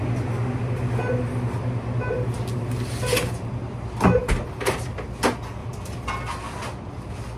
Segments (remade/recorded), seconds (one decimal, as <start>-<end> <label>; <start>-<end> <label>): 0.0-5.6 recorded; 5.6-6.1 remade; 6.1-7.4 recorded